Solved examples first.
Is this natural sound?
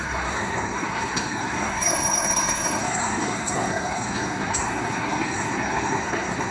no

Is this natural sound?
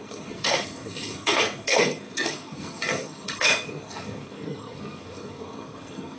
no